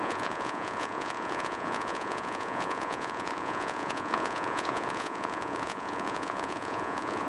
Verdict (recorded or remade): remade